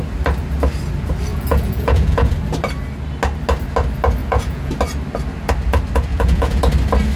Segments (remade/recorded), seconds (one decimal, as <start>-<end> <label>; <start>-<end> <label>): 0.0-1.3 recorded; 1.3-2.3 remade; 2.3-4.2 recorded; 4.2-4.7 remade; 4.7-6.1 recorded; 6.1-6.6 remade; 6.6-7.2 recorded